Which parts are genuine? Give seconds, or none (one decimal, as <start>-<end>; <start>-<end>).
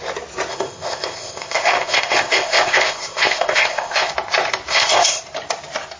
0.0-0.5; 4.1-4.7; 5.2-6.0